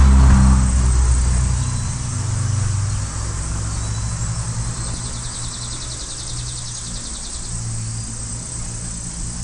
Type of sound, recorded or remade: recorded